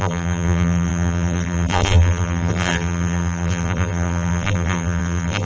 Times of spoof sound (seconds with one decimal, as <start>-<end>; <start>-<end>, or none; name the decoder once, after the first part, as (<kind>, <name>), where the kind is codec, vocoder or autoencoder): 0.0-5.4 (vocoder, BigVGAN v2)

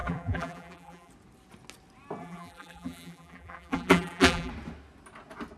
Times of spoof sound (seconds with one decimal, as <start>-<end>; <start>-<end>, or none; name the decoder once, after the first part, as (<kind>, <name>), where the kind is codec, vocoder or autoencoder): 0.0-1.1 (vocoder, BigVGAN v2); 2.2-4.5

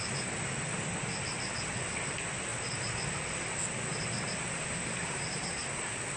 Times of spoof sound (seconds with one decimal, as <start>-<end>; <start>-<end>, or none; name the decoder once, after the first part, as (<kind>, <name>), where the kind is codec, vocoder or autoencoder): 5.0-5.6 (vocoder, BigVGAN v2)